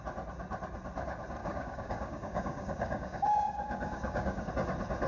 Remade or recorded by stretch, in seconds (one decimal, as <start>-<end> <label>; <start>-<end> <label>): 0.0-1.4 recorded; 1.4-4.5 remade; 4.5-5.1 recorded